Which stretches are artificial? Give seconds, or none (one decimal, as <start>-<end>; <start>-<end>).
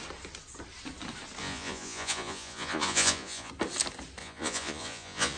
1.4-3.5; 4.2-5.4